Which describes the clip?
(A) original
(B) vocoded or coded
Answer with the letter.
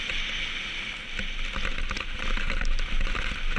A